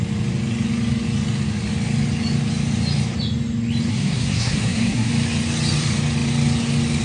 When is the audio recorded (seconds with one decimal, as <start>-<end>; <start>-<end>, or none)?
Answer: 0.0-3.9; 5.1-7.0